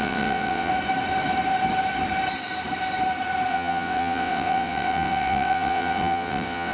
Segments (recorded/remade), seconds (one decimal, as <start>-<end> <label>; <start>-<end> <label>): 0.0-0.7 remade; 0.7-3.5 recorded; 3.5-6.7 remade